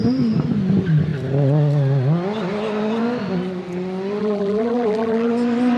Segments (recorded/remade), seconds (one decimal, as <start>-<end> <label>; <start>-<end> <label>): 0.0-4.2 recorded; 4.2-5.3 remade; 5.3-5.8 recorded